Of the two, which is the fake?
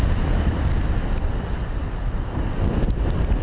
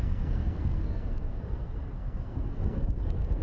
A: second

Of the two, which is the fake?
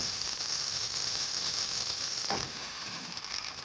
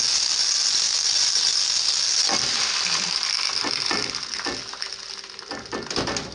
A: first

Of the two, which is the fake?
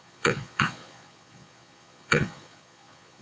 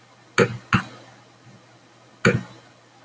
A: first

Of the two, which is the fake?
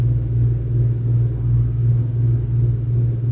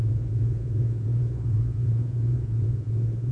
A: second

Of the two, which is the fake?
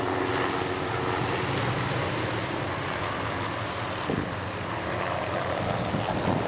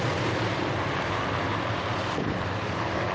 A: second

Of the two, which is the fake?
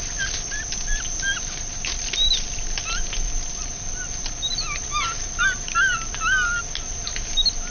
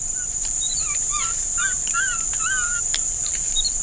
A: second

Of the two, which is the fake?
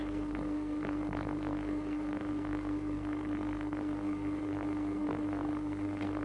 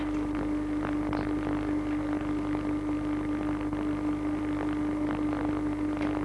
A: first